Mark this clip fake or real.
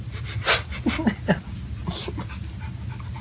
real